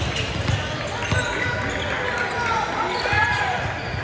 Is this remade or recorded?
recorded